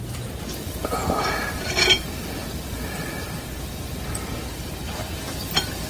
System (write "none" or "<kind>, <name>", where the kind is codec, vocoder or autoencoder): none